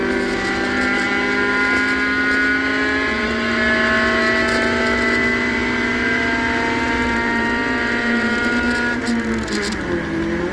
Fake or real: real